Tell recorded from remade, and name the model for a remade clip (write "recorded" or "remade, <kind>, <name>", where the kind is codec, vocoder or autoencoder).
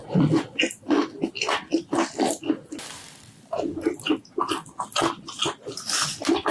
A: recorded